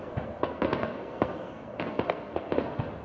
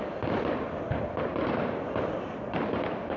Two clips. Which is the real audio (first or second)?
second